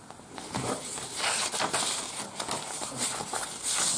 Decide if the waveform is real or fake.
real